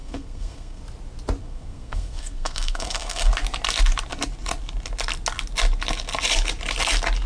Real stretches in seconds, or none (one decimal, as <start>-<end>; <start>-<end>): 0.8-1.4; 3.3-7.3

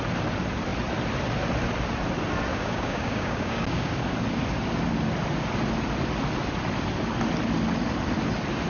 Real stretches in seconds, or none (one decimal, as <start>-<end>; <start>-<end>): 0.0-2.5; 3.9-8.7

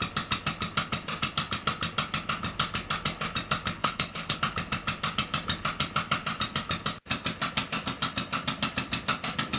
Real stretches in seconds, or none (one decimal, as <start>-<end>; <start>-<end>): 0.0-3.8; 4.4-9.6

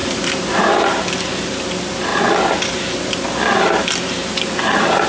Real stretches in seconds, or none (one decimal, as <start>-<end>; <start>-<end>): 0.6-5.1